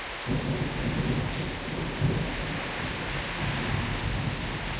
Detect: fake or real real